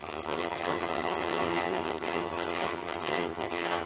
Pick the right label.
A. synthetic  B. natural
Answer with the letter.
A